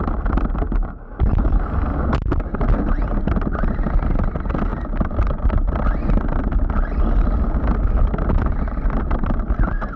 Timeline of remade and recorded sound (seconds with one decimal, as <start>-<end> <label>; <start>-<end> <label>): 0.0-10.0 recorded